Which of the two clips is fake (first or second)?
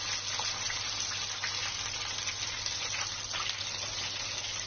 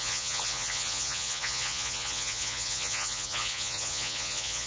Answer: second